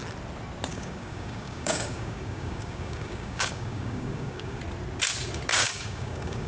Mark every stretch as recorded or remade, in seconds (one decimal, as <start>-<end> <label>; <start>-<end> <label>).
0.0-0.7 recorded; 0.7-4.6 remade; 4.6-5.5 recorded; 5.5-6.5 remade